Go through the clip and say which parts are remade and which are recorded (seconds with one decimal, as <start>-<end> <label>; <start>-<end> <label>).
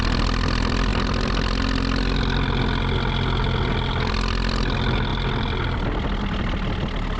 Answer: 0.0-7.2 recorded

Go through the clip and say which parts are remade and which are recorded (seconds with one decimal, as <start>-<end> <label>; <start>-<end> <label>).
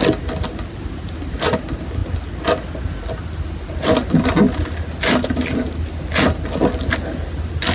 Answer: 0.0-7.7 recorded